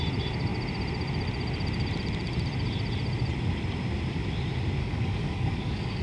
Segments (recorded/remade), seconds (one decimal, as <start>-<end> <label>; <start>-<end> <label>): 0.0-4.8 recorded; 4.8-6.0 remade